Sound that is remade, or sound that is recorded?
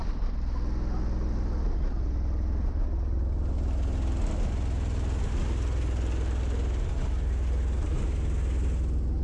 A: recorded